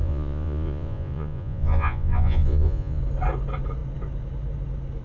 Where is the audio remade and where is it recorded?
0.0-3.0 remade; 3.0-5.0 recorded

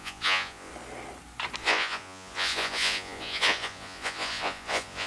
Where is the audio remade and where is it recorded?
0.0-0.7 remade; 0.7-1.6 recorded; 1.6-5.1 remade